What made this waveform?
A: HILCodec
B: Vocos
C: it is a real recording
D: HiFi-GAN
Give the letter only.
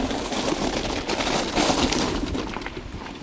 C